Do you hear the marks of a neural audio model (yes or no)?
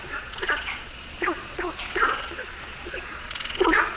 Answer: yes